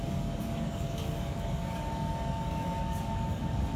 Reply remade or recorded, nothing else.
remade